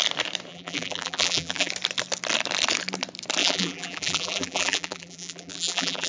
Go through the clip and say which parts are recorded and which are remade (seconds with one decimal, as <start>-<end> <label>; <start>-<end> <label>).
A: 0.0-0.5 recorded; 0.5-1.7 remade; 1.7-3.4 recorded; 3.4-6.1 remade